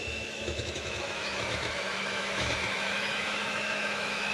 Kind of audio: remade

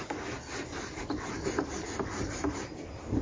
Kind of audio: recorded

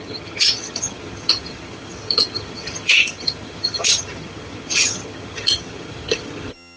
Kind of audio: remade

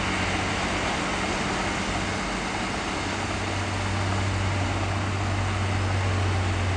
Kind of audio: recorded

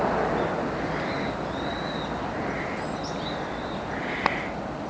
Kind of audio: recorded